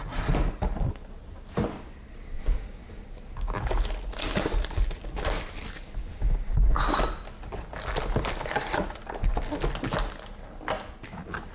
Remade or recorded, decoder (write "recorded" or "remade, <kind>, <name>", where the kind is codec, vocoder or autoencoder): recorded